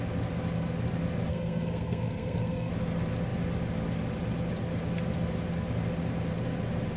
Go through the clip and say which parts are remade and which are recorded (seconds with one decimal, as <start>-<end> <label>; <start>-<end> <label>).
0.0-1.3 recorded; 1.3-2.7 remade; 2.7-7.0 recorded